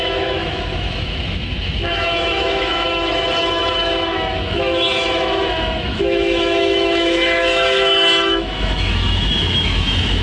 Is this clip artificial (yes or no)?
yes